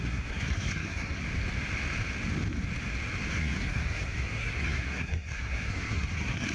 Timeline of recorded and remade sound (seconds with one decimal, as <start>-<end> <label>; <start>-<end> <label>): 0.0-1.2 remade; 1.2-3.3 recorded; 3.3-6.5 remade